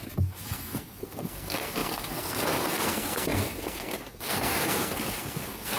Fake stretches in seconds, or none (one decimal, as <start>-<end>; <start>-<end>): 0.0-5.8